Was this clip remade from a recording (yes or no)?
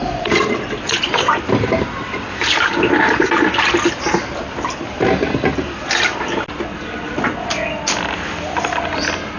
no